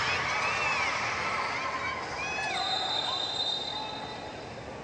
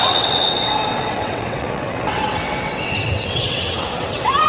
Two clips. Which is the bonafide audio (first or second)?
first